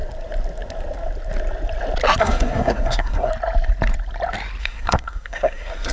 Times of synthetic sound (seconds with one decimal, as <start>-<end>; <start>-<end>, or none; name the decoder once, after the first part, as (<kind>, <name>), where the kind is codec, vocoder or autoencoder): 2.2-3.3 (codec, SNAC); 4.6-5.9